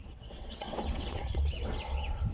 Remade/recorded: remade